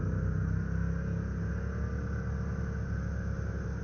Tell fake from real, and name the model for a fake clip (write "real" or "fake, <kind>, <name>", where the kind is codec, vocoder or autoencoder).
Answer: real